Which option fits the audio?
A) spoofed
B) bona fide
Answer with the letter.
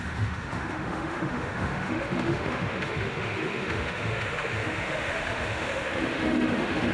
A